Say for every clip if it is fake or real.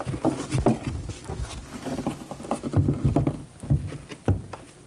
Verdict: real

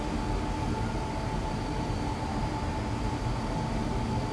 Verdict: real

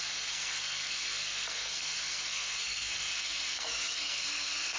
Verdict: fake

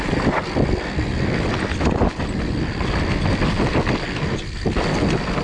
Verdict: real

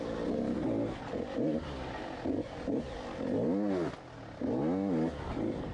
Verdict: real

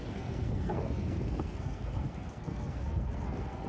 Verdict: fake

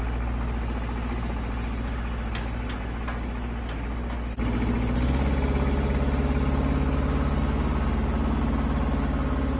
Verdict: real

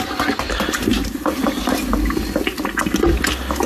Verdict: real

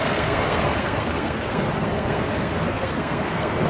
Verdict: fake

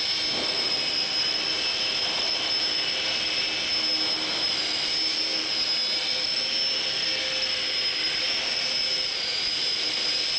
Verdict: real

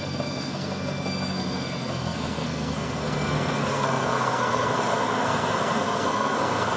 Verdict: fake